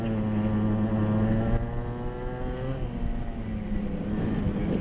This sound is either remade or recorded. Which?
recorded